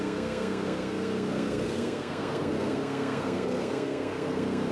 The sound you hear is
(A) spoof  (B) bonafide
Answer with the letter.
A